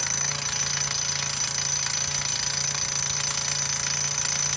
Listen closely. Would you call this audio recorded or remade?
recorded